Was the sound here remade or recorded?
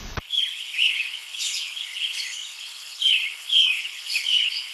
remade